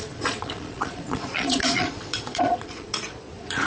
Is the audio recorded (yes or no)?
no